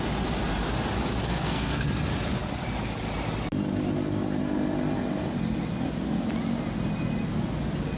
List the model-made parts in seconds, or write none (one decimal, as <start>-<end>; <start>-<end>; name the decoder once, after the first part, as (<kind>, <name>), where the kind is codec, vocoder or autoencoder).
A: 1.2-1.9 (codec, SNAC)